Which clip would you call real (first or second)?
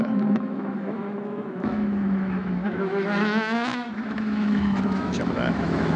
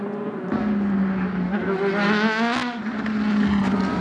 second